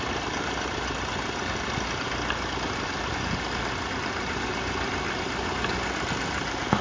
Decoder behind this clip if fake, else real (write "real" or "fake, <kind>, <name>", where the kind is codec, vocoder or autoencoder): real